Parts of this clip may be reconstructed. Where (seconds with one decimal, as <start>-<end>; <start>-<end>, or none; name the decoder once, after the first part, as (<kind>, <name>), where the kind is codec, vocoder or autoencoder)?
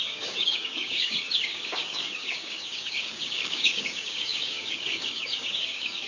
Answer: 0.0-6.1 (codec, DAC)